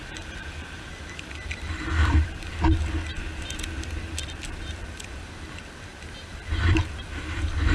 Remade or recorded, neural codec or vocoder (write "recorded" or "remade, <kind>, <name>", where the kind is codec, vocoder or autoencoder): remade, vocoder, BigVGAN v2